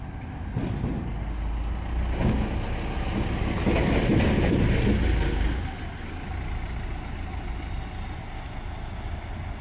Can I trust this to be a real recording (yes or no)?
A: yes